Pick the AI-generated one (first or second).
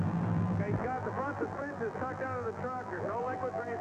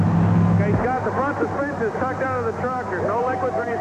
first